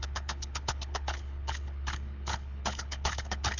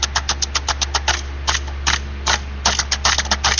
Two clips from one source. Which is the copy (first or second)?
first